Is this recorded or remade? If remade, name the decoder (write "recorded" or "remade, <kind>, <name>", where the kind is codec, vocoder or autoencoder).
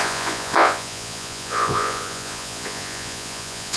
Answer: remade, vocoder, Vocos